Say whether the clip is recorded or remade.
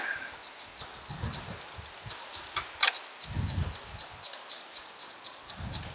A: recorded